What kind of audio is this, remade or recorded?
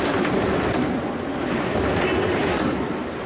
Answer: recorded